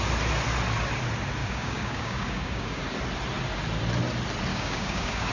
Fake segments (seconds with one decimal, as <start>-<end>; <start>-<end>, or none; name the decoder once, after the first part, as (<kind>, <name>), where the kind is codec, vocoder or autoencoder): 1.4-2.8 (codec, DAC); 4.5-5.3